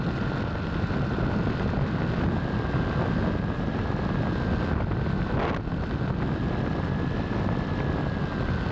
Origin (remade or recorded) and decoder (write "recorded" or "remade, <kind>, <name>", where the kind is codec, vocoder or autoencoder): recorded